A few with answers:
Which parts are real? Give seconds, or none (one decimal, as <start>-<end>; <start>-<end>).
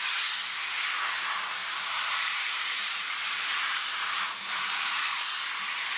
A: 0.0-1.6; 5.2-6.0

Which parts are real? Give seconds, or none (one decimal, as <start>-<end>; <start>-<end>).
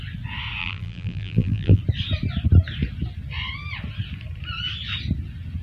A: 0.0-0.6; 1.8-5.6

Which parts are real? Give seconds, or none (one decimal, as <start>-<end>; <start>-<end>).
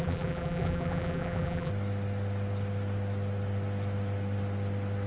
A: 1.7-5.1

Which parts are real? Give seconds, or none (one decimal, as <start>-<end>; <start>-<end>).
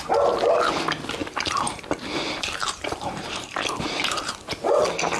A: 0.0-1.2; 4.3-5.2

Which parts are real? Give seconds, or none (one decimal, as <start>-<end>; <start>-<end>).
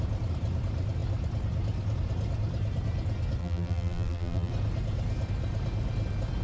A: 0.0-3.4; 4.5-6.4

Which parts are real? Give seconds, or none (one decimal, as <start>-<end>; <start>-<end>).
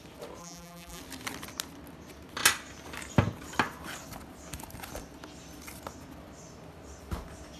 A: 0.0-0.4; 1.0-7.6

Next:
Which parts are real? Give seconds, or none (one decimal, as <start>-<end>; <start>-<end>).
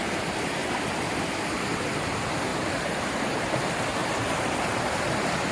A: 0.6-1.7; 4.0-5.0